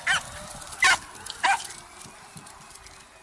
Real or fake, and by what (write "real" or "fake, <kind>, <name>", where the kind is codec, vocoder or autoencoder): real